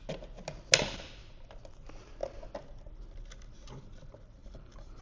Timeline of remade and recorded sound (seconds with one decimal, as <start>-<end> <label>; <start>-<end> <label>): 0.0-4.4 recorded; 4.4-5.0 remade